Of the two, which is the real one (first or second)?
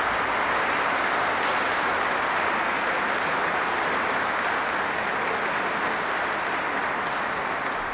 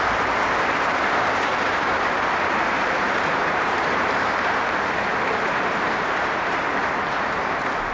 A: first